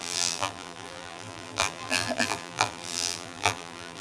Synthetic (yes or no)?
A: yes